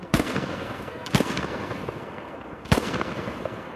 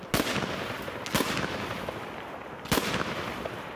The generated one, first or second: first